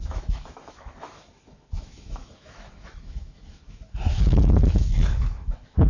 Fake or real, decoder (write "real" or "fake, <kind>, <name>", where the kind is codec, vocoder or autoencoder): fake, autoencoder, DAC-VAE